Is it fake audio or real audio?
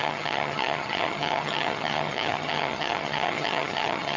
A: fake